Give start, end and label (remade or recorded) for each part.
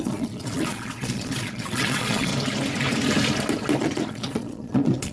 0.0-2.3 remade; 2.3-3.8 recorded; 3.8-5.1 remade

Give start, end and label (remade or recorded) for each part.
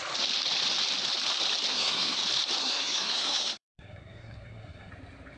0.0-1.7 recorded; 1.7-2.2 remade; 2.2-2.6 recorded; 2.6-4.9 remade; 4.9-5.4 recorded